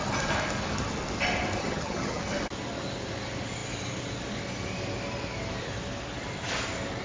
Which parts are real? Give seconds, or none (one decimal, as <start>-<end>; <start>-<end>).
0.0-1.6; 2.2-7.0